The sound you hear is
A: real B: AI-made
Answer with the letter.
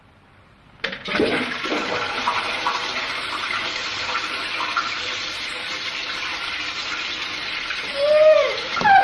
B